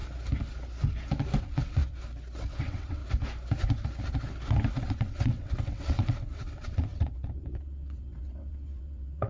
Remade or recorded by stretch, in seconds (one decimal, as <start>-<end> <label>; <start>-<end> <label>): 0.0-1.4 recorded; 1.4-1.8 remade; 1.8-2.5 recorded; 2.5-3.0 remade; 3.0-4.7 recorded; 4.7-9.3 remade